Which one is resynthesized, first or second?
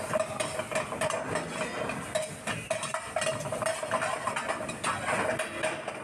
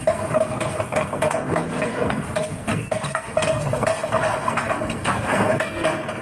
second